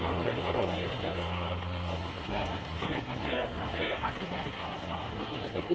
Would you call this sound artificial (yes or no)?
yes